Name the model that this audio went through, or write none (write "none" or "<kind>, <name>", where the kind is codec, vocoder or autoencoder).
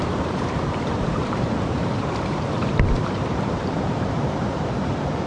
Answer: vocoder, BigVGAN v2